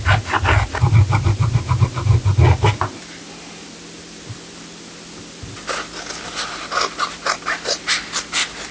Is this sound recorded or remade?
recorded